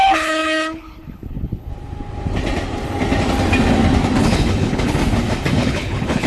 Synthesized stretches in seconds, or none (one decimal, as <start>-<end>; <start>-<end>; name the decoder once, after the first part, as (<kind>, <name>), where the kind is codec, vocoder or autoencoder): 0.0-1.7 (codec, HILCodec); 4.2-5.0; 5.5-6.3